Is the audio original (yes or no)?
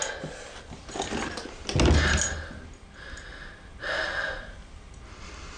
yes